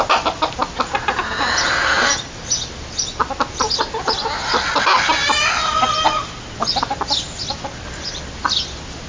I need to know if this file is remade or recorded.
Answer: recorded